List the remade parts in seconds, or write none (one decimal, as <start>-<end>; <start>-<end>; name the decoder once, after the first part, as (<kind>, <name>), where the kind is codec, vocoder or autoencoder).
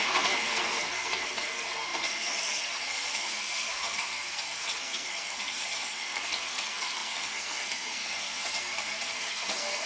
0.0-9.9 (codec, SNAC)